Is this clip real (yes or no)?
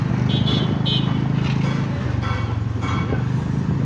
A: yes